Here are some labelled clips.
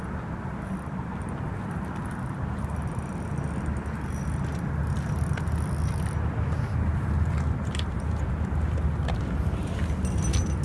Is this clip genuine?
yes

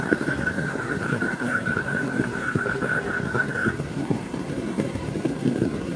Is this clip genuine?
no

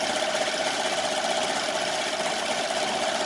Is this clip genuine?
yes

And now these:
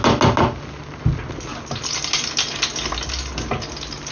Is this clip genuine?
yes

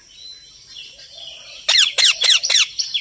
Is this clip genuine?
yes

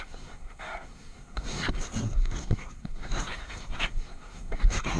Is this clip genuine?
no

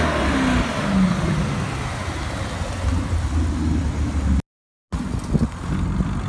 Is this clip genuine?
yes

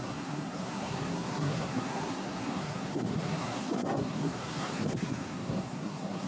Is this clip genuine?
no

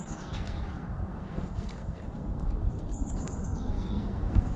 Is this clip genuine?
no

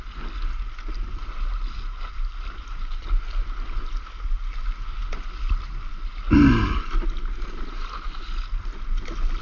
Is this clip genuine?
yes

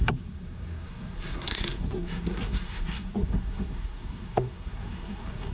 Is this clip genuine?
no